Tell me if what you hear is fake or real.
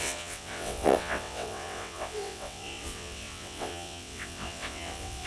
fake